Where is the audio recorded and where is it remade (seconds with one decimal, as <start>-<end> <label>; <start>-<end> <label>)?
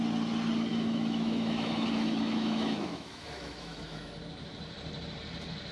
0.0-0.7 recorded; 0.7-4.1 remade; 4.1-5.7 recorded